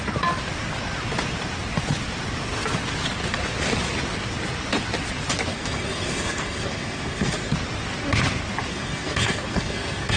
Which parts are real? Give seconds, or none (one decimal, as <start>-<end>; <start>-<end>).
0.0-5.5; 7.5-8.7